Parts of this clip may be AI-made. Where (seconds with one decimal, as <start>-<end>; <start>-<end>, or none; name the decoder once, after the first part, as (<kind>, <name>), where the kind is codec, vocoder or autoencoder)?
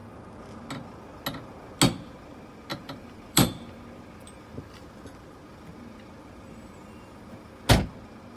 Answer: 2.7-3.6 (vocoder, BigVGAN v2)